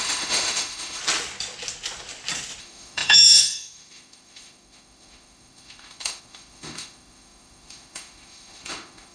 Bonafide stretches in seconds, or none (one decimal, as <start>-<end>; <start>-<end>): 1.0-2.6

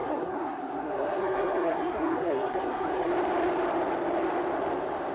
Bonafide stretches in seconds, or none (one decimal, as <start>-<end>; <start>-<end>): 3.1-5.1

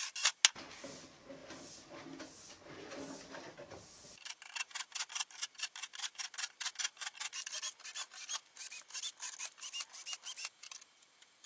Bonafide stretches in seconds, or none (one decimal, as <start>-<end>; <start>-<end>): 0.0-11.5

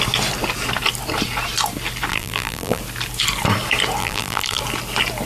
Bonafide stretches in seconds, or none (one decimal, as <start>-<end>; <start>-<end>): 0.0-2.1; 2.8-4.0; 4.6-5.3